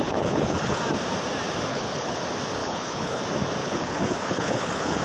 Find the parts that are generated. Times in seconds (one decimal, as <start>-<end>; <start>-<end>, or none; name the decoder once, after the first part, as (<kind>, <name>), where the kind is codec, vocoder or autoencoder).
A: 0.0-0.8 (codec, HILCodec); 1.7-2.2; 2.6-3.2; 3.6-5.0